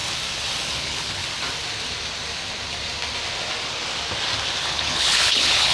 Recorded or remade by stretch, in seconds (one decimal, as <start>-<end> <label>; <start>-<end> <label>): 0.0-0.7 recorded; 0.7-1.2 remade; 1.2-4.6 recorded; 4.6-5.7 remade